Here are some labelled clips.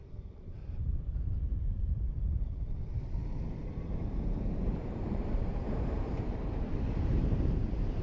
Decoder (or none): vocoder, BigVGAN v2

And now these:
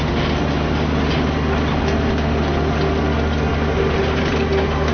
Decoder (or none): none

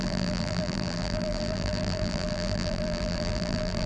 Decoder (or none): vocoder, BigVGAN v2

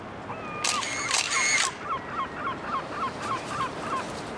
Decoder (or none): none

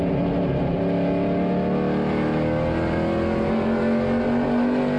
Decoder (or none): none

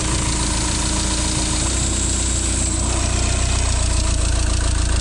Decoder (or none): none